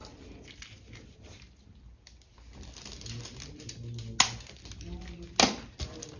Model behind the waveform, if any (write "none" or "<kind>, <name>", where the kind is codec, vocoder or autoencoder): none